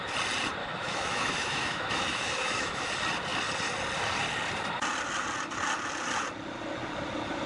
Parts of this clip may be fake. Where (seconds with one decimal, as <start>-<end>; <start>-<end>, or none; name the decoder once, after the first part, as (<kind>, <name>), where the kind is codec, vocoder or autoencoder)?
0.6-2.9 (autoencoder, DAC-VAE)

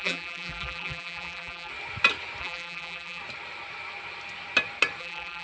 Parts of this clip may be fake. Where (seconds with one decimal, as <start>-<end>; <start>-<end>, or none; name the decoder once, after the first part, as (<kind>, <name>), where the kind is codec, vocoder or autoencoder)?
0.0-1.7 (vocoder, BigVGAN v2); 2.4-3.2; 5.0-5.4